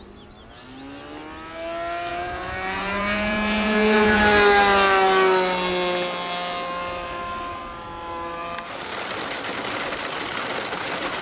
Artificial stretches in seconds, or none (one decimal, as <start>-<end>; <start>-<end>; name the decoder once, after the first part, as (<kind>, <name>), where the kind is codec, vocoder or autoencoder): 2.1-4.2 (vocoder, Vocos)